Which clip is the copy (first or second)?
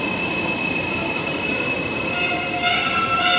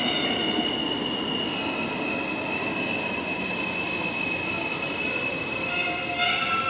first